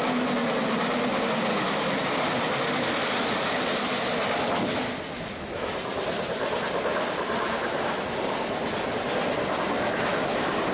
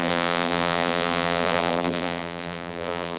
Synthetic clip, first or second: second